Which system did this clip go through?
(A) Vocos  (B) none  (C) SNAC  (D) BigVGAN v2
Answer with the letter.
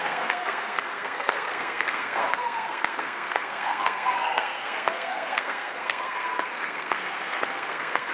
C